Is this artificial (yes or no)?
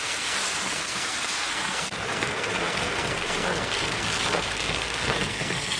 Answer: yes